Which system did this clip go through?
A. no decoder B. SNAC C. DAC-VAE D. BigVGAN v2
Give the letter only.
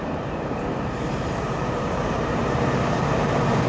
D